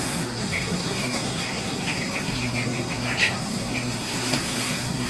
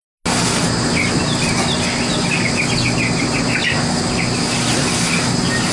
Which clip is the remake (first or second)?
first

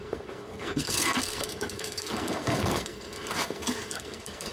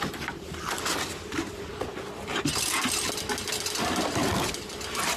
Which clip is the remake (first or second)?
first